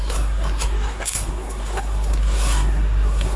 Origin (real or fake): fake